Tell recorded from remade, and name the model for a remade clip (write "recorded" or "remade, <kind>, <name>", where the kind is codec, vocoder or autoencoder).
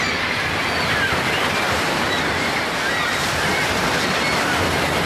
recorded